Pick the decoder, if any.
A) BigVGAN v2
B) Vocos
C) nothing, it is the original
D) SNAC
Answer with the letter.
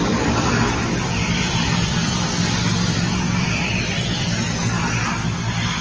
A